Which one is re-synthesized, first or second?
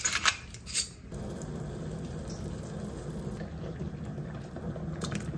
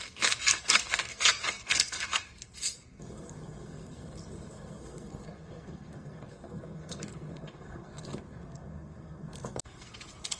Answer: second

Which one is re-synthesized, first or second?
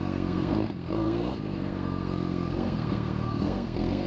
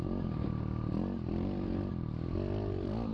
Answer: first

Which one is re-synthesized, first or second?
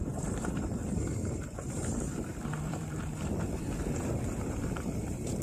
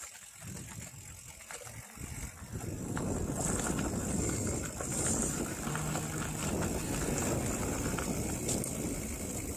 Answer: first